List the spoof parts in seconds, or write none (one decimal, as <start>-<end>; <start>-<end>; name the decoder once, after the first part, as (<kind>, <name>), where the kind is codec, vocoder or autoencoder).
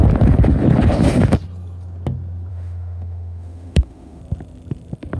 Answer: 2.5-4.2 (autoencoder, DAC-VAE)